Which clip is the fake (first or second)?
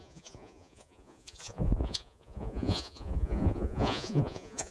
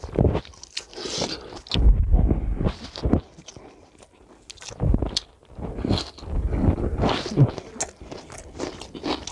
first